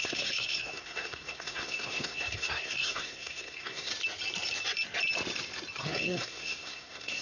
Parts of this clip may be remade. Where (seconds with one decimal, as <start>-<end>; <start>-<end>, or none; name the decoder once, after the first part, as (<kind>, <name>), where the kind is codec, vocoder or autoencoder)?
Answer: 0.0-3.9 (codec, SNAC); 5.8-7.2